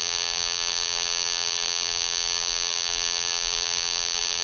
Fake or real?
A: fake